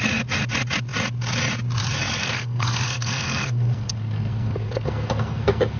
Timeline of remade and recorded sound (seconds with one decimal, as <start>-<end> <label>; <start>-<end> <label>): 0.0-2.2 recorded; 2.2-5.8 remade